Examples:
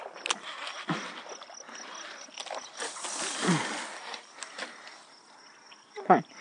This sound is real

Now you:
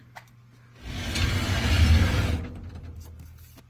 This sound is real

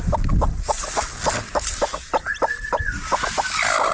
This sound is real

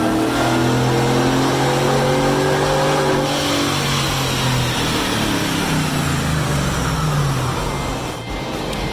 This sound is real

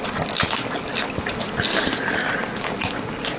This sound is real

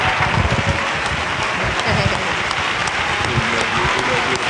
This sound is real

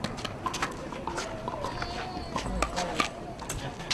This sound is real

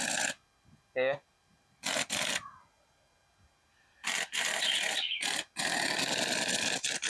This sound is real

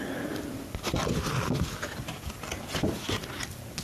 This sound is real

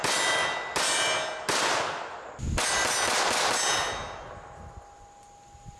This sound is real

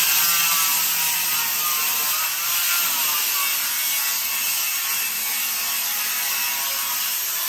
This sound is real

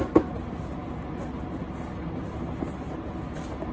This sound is real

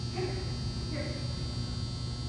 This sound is real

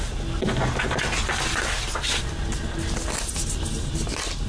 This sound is real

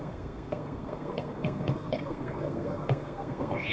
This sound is fake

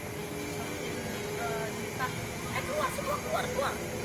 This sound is real